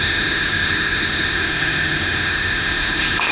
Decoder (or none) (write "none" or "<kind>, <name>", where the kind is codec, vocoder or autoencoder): autoencoder, DAC-VAE